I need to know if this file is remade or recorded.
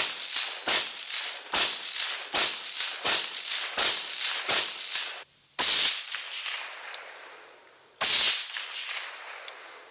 recorded